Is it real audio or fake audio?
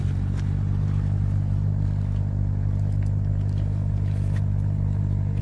real